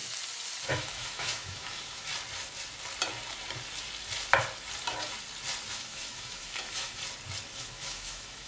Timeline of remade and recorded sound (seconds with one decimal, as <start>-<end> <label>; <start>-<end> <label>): 0.0-0.7 recorded; 0.7-2.1 remade; 2.1-5.7 recorded; 5.7-7.0 remade; 7.0-7.6 recorded; 7.6-8.5 remade